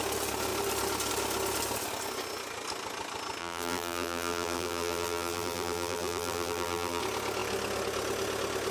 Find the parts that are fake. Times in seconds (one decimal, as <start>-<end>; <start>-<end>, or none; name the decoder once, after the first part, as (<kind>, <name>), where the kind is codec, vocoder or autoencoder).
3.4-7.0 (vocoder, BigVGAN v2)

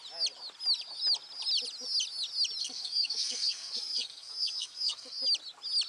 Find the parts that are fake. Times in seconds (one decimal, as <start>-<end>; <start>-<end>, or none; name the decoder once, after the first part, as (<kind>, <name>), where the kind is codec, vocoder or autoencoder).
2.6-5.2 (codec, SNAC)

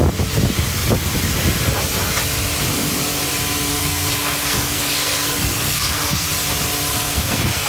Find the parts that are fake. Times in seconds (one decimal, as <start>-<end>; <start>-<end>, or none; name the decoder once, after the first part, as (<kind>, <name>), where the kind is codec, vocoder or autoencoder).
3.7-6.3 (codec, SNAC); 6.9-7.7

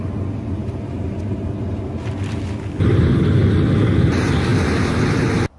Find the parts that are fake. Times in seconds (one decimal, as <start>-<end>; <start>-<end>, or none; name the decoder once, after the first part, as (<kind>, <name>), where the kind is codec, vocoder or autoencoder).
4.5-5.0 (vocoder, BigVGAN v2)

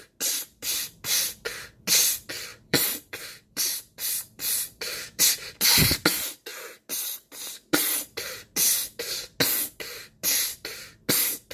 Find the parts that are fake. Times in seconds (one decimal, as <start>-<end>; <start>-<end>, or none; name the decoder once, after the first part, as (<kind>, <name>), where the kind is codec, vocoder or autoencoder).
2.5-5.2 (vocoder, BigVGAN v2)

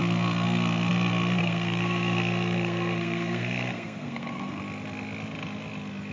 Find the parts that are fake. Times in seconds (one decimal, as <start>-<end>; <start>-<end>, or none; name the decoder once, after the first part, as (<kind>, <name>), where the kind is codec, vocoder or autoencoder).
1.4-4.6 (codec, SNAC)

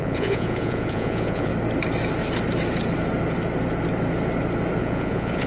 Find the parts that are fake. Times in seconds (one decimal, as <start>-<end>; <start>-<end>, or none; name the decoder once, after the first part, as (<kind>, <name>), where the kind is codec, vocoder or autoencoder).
0.0-1.5 (vocoder, Vocos); 4.8-5.5